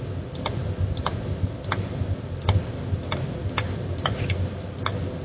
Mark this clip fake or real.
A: real